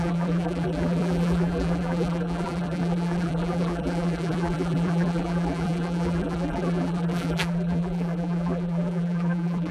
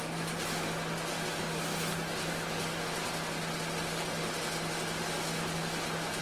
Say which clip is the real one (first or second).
second